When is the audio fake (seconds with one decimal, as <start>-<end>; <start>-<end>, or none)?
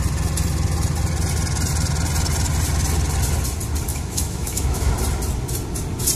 3.9-4.9